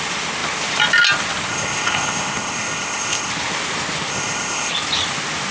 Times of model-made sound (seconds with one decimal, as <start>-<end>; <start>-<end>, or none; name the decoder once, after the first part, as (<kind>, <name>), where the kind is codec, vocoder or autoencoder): 1.5-3.3 (codec, ZipCodec); 4.1-4.7